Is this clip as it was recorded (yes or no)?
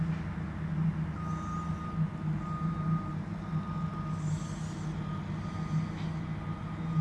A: yes